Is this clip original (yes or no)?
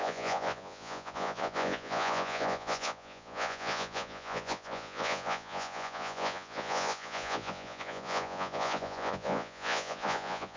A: no